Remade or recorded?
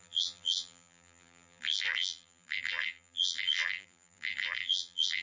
remade